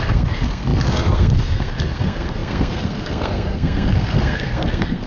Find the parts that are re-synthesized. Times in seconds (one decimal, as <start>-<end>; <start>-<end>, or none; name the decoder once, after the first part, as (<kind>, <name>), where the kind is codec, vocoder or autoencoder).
0.0-5.1 (codec, SNAC)